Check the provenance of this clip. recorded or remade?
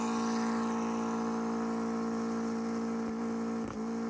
recorded